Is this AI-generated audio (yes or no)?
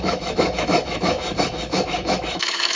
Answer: yes